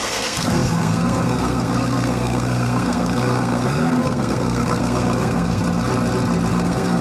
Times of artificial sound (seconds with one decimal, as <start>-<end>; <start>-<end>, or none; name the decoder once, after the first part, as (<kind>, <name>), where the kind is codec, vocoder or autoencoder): 0.0-5.6 (codec, SNAC); 6.5-7.0